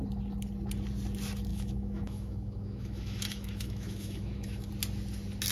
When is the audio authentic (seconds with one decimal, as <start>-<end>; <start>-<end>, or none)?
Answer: 0.0-1.5; 4.7-5.5

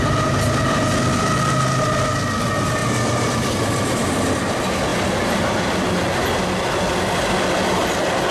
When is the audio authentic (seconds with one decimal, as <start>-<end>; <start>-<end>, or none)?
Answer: 0.0-8.3

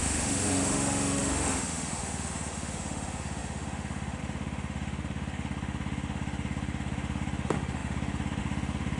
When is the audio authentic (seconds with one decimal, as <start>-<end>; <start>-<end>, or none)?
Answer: none

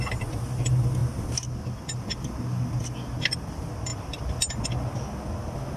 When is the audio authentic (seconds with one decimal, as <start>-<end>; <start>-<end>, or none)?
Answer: 0.0-5.8